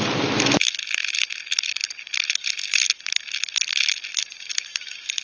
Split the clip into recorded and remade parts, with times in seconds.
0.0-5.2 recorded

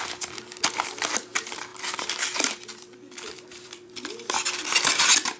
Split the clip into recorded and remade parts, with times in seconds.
0.0-1.7 recorded; 1.7-3.9 remade; 3.9-5.4 recorded

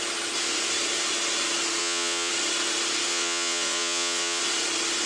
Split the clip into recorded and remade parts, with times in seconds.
0.0-1.8 recorded; 1.8-2.3 remade; 2.3-3.1 recorded; 3.1-4.4 remade; 4.4-5.1 recorded

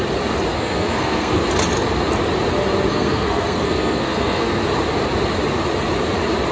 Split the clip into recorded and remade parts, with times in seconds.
0.0-0.5 recorded; 0.5-1.4 remade; 1.4-2.9 recorded; 2.9-4.6 remade; 4.6-6.5 recorded